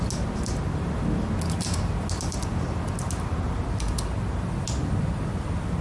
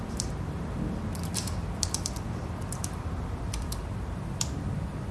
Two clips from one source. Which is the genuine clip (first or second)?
first